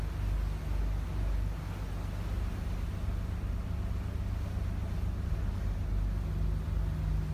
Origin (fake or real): real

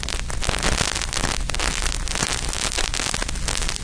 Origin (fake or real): real